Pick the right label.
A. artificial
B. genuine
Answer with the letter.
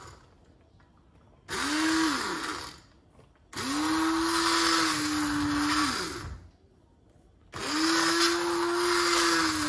B